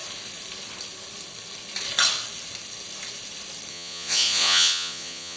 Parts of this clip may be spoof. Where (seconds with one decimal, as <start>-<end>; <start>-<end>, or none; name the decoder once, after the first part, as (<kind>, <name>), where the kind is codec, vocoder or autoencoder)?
3.7-5.4 (vocoder, Vocos)